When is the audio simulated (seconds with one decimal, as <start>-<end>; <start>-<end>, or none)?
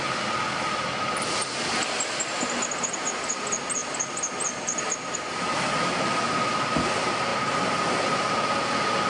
7.3-7.8